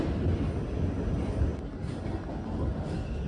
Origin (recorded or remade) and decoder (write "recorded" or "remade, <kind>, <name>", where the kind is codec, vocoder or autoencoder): recorded